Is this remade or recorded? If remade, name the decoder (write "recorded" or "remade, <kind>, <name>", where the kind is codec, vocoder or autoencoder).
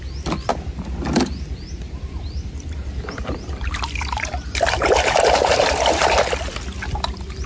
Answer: recorded